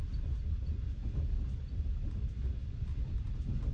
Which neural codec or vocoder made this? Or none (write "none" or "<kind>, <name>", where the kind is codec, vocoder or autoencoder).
none